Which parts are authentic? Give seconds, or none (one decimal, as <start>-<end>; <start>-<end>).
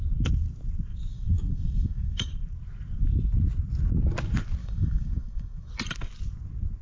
0.0-1.1; 2.3-4.6; 5.7-6.8